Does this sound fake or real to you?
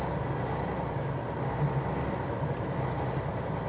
real